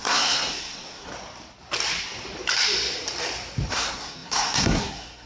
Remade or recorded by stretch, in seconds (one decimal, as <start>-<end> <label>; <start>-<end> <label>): 0.0-1.1 remade; 1.1-3.7 recorded; 3.7-5.3 remade